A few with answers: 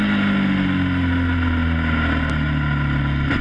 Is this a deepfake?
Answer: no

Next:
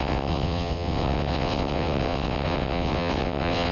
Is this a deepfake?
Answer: yes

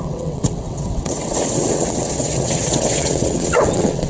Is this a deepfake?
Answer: yes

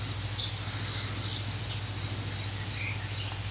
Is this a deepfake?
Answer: no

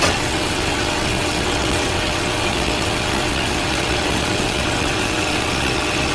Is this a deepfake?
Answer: yes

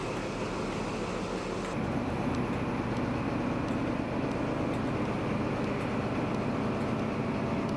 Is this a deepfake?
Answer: no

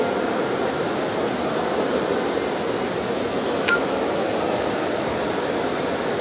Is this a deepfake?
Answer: no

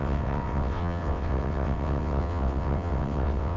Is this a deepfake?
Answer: yes